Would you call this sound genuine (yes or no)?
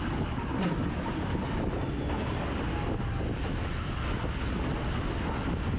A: yes